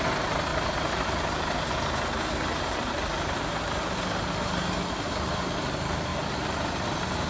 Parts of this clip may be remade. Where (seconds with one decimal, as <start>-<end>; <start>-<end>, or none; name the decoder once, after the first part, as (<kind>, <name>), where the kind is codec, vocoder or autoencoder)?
0.5-4.0 (vocoder, BigVGAN v2); 6.1-7.3